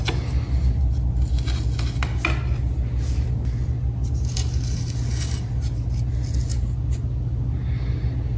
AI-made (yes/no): no